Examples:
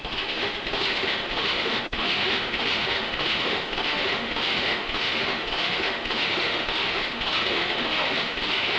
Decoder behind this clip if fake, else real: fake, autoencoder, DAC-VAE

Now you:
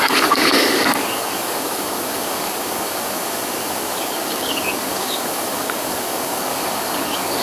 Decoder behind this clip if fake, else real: fake, codec, DAC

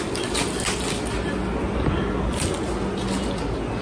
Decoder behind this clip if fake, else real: real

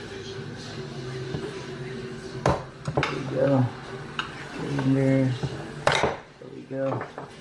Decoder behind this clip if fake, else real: real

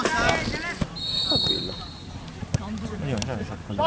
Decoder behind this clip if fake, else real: real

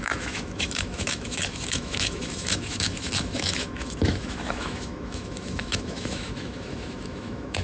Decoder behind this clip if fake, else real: fake, autoencoder, DAC-VAE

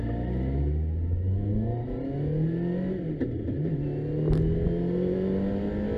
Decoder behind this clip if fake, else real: real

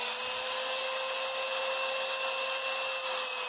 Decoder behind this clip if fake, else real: real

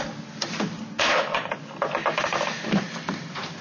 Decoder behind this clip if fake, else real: real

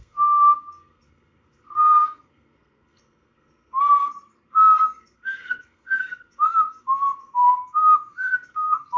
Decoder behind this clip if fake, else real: fake, codec, SNAC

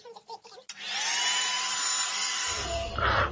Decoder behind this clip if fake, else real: fake, vocoder, BigVGAN v2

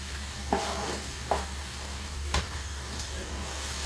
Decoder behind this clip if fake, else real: fake, codec, DAC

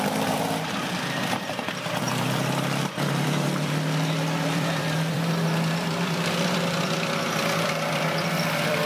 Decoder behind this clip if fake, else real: fake, vocoder, BigVGAN v2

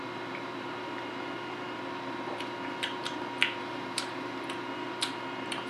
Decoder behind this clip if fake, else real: fake, vocoder, BigVGAN v2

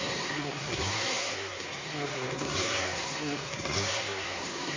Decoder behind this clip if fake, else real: fake, codec, SNAC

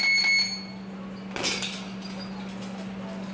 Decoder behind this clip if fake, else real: real